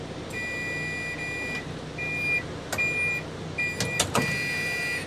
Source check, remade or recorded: recorded